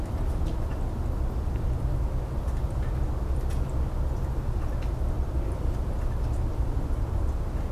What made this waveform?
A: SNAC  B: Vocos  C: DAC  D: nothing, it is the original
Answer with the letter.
D